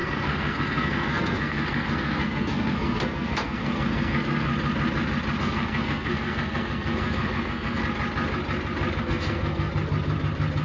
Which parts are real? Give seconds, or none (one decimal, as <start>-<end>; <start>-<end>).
4.5-5.4; 7.8-9.0; 9.7-10.6